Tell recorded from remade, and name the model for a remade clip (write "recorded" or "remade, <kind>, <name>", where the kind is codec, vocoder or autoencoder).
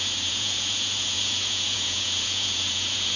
remade, vocoder, Vocos